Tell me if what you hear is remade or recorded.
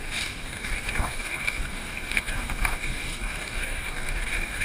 remade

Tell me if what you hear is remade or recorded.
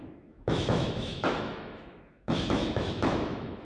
remade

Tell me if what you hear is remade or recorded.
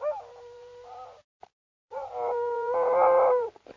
remade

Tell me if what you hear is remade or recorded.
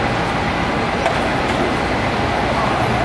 recorded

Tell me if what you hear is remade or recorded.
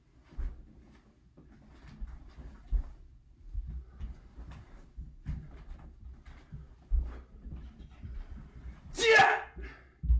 recorded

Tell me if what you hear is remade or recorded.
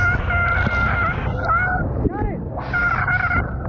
recorded